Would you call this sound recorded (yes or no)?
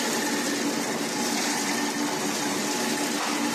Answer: yes